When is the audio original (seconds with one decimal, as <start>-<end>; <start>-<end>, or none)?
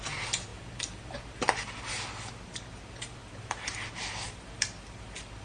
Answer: none